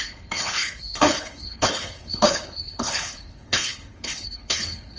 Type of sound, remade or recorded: remade